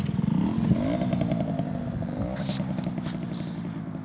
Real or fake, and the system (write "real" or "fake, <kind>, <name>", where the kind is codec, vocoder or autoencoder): real